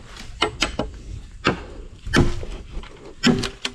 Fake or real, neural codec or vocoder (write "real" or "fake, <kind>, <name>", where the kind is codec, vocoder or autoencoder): real